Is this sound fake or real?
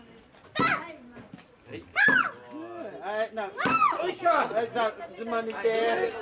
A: real